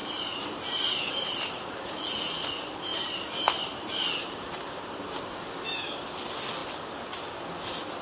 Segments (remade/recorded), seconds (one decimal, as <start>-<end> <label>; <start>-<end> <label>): 0.0-1.9 remade; 1.9-2.9 recorded; 2.9-5.5 remade; 5.5-8.0 recorded